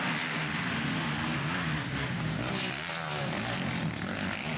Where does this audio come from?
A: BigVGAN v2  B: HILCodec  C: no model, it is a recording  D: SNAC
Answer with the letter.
C